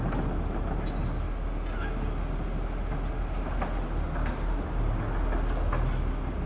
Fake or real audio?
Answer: real